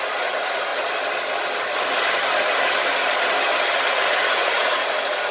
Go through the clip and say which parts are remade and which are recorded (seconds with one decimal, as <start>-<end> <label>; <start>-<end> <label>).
0.0-0.7 remade; 0.7-3.9 recorded; 3.9-5.3 remade